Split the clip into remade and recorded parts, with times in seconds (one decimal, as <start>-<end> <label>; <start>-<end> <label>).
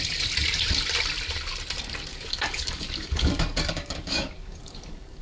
0.0-2.1 recorded; 2.1-5.2 remade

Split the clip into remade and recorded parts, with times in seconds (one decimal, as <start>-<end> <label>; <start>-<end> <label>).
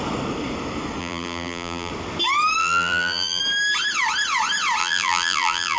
0.0-1.0 recorded; 1.0-1.9 remade; 1.9-2.6 recorded; 2.6-3.4 remade; 3.4-4.8 recorded; 4.8-5.8 remade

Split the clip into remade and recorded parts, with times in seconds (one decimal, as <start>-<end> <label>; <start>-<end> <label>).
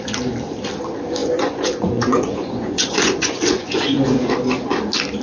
0.0-1.2 recorded; 1.2-4.3 remade; 4.3-5.2 recorded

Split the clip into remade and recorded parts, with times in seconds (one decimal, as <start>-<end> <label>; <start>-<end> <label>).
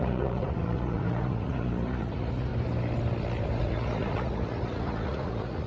0.0-2.5 remade; 2.5-3.6 recorded; 3.6-5.7 remade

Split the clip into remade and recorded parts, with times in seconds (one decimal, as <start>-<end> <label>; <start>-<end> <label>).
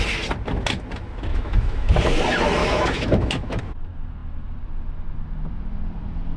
0.0-1.3 recorded; 1.3-1.9 remade; 1.9-2.6 recorded; 2.6-3.6 remade; 3.6-6.4 recorded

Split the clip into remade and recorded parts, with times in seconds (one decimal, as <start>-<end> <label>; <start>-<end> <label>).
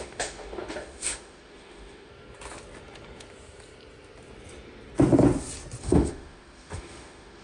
0.0-2.1 remade; 2.1-5.8 recorded; 5.8-7.4 remade